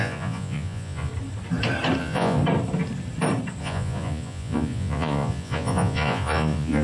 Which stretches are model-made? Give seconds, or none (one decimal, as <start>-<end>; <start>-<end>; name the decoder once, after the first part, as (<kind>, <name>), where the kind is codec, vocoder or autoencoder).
0.0-1.1 (vocoder, Vocos); 2.0-2.4; 3.6-6.8